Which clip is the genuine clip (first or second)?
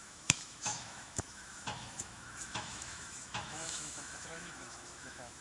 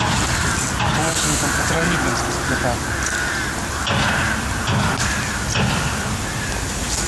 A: second